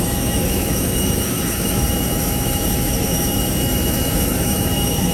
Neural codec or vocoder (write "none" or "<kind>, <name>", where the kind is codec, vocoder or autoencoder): autoencoder, DAC-VAE